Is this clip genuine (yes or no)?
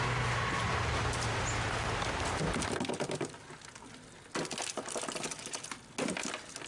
yes